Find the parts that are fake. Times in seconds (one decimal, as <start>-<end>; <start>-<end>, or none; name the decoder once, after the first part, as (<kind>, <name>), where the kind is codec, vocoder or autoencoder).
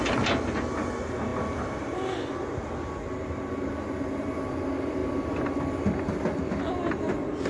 none